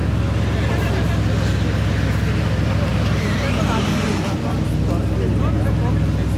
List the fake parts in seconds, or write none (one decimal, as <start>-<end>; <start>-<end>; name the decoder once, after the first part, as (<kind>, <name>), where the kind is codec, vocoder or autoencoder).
none

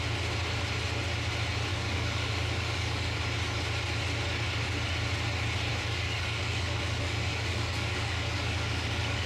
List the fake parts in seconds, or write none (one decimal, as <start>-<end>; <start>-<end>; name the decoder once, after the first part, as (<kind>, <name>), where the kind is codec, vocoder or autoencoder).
1.7-3.2 (codec, DAC); 5.7-9.3

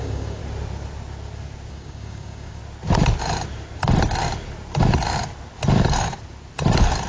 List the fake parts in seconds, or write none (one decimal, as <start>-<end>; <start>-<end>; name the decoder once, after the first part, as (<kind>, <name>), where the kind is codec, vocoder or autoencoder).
0.0-0.4 (codec, DAC); 1.7-2.6

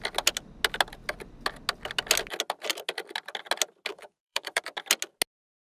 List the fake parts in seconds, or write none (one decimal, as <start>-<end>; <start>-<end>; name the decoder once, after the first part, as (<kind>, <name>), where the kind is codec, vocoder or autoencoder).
3.9-4.6 (codec, DAC)

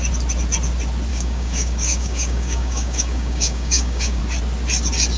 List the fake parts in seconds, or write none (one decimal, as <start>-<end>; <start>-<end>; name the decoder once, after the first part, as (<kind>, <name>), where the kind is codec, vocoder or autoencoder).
1.1-4.2 (codec, DAC)

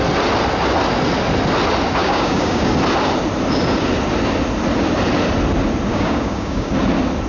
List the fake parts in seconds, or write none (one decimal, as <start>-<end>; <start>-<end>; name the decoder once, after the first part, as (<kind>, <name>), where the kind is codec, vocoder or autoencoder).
2.0-2.7 (codec, DAC); 5.9-6.7

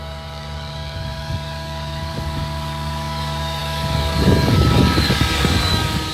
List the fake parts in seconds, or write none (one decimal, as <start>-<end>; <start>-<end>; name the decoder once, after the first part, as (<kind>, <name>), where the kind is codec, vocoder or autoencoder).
0.0-6.1 (codec, DAC)